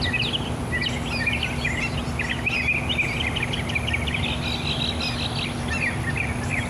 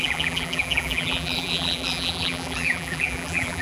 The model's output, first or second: second